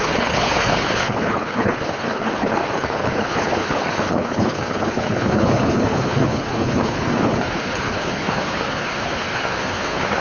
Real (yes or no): no